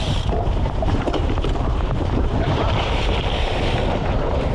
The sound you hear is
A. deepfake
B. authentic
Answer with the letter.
A